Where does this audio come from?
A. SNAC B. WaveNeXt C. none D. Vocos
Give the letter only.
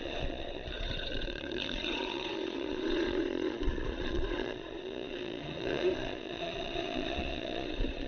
D